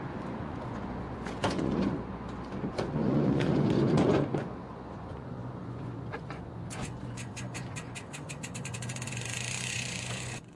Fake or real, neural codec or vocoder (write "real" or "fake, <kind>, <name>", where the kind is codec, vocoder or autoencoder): fake, vocoder, Vocos